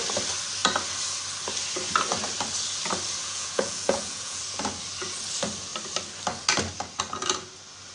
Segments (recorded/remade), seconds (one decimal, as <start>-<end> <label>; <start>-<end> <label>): 0.0-3.2 recorded; 3.2-4.4 remade; 4.4-7.9 recorded